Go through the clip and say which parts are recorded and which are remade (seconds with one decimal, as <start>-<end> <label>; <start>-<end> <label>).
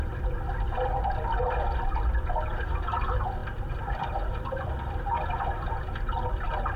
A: 0.0-3.4 recorded; 3.4-6.8 remade